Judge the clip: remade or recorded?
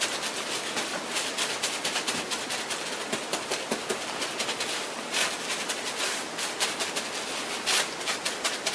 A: recorded